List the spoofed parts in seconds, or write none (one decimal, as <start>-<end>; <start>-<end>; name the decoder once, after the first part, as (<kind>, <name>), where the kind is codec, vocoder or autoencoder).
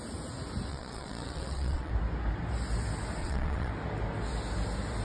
0.7-1.9 (vocoder, WaveNeXt); 3.2-3.7